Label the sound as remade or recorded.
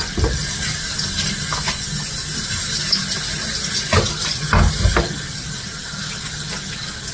recorded